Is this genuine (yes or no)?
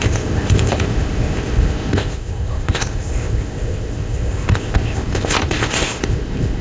no